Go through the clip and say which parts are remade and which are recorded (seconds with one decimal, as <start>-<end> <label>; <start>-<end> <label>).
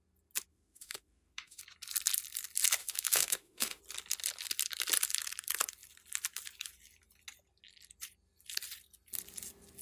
0.0-0.5 recorded; 0.5-1.6 remade; 1.6-2.8 recorded; 2.8-3.8 remade; 3.8-9.8 recorded